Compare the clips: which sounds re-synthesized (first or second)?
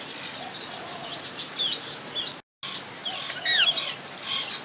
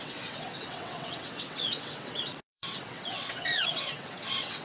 second